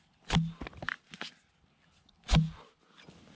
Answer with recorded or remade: recorded